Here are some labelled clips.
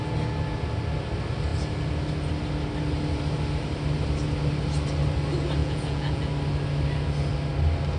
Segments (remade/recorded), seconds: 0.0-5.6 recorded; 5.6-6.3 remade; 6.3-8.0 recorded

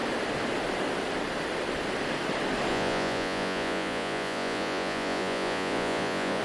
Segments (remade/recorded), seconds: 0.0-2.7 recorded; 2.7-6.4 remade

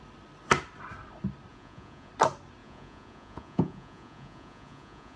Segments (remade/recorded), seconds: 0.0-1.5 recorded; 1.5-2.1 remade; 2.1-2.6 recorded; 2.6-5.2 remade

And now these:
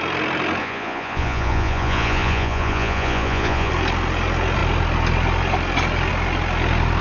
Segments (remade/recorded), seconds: 0.0-0.6 recorded; 0.6-3.7 remade; 3.7-7.0 recorded

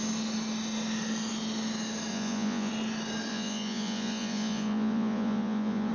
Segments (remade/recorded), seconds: 0.0-2.1 recorded; 2.1-2.7 remade; 2.7-3.3 recorded; 3.3-5.9 remade